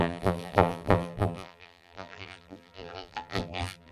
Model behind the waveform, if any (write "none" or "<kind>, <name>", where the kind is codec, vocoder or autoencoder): vocoder, BigVGAN v2